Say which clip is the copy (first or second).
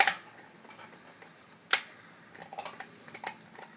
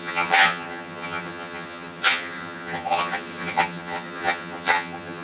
second